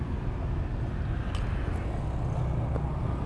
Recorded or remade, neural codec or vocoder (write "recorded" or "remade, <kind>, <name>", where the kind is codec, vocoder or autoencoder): recorded